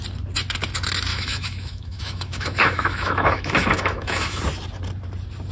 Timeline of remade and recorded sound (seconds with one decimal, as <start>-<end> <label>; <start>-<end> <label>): 0.0-1.1 recorded; 1.1-4.4 remade; 4.4-5.5 recorded